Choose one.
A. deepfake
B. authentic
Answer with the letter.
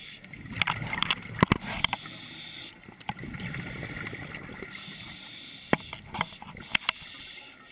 B